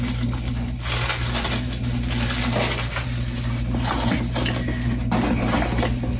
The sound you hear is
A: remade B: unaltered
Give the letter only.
B